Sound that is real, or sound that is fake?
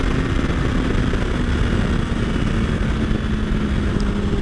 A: real